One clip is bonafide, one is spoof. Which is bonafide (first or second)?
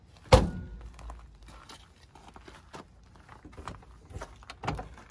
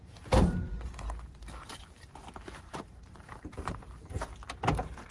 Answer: first